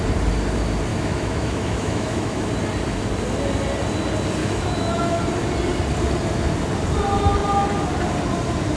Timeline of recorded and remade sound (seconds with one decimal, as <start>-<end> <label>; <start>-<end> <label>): 0.0-0.9 recorded; 0.9-2.5 remade; 2.5-4.4 recorded; 4.4-5.2 remade; 5.2-8.8 recorded

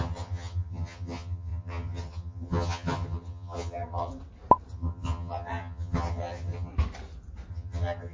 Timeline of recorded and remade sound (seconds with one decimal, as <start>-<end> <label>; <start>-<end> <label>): 0.0-4.1 remade; 4.1-4.7 recorded; 4.7-6.7 remade; 6.7-7.5 recorded; 7.5-8.1 remade

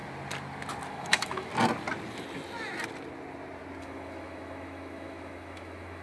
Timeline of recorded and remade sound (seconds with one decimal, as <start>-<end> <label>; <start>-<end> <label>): 0.0-0.9 recorded; 0.9-1.5 remade; 1.5-3.8 recorded; 3.8-6.0 remade

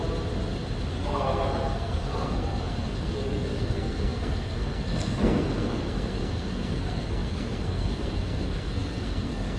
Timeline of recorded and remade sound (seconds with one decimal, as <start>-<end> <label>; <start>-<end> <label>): 0.0-0.9 recorded; 0.9-9.6 remade

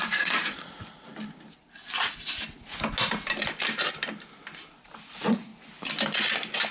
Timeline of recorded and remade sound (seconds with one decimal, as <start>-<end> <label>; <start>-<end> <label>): 0.0-1.1 remade; 1.1-5.1 recorded; 5.1-5.5 remade; 5.5-6.7 recorded

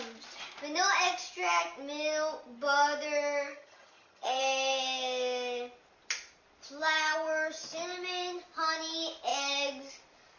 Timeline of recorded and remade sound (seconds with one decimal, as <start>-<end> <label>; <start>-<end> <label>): 0.0-3.5 recorded; 3.5-4.4 remade; 4.4-10.4 recorded

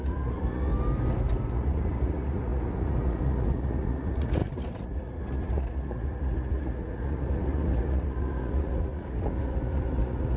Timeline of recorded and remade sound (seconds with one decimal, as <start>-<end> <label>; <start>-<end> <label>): 0.0-0.7 remade; 0.7-1.5 recorded; 1.5-10.4 remade

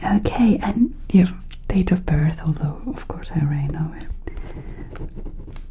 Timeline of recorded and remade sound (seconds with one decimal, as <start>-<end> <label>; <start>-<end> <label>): 0.0-5.7 recorded